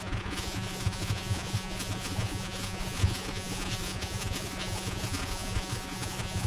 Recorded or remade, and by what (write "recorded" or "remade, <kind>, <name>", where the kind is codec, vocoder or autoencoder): remade, vocoder, Vocos